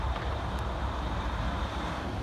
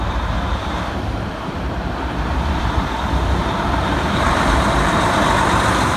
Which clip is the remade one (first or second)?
second